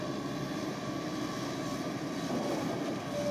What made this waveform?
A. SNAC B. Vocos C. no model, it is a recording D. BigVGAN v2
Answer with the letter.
C